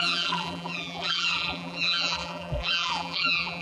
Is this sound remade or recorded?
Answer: remade